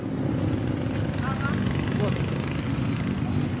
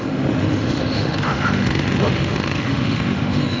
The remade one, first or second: second